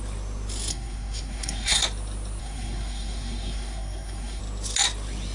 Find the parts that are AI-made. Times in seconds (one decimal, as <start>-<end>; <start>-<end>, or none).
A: 0.7-1.8; 2.4-4.4